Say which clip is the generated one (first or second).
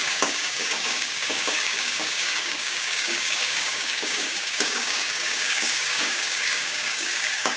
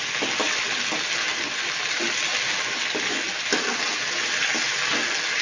first